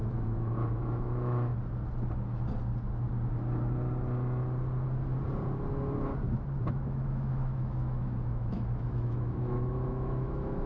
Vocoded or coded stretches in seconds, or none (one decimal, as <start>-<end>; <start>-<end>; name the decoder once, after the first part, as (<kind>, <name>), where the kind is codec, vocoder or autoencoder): 0.0-1.5 (autoencoder, DAC-VAE); 6.7-10.7